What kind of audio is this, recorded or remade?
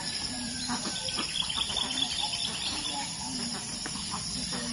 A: remade